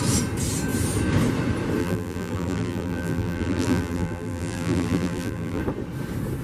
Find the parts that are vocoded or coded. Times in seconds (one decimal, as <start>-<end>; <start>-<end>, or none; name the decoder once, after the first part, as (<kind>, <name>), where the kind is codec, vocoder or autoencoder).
1.8-5.6 (vocoder, BigVGAN v2)